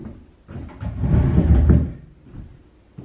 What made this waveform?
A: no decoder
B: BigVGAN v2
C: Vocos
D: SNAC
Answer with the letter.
A